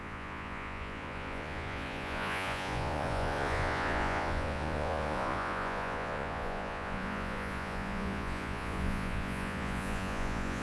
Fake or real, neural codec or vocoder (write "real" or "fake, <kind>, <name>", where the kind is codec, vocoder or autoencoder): fake, vocoder, Vocos